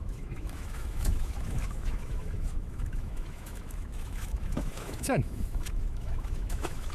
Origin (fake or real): fake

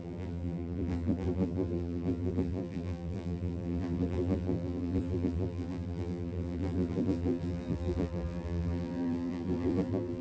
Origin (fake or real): fake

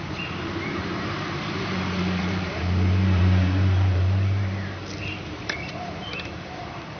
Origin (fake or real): fake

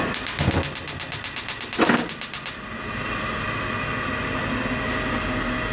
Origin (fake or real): real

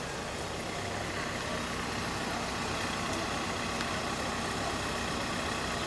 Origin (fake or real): real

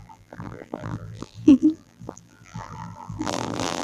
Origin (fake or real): fake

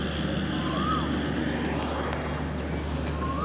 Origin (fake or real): real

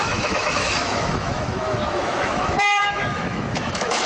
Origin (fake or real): fake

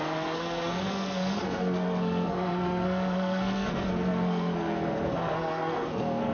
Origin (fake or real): fake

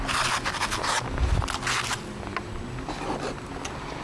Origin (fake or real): real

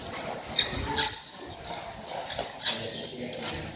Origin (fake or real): real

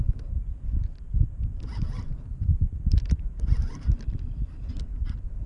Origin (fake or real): real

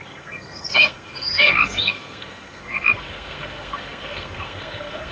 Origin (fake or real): fake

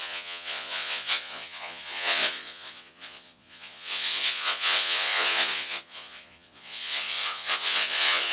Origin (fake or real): fake